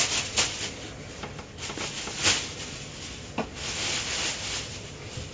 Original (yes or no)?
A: yes